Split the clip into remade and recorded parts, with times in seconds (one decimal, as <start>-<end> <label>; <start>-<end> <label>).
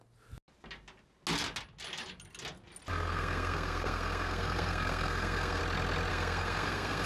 0.0-2.9 recorded; 2.9-5.6 remade; 5.6-6.1 recorded; 6.1-7.1 remade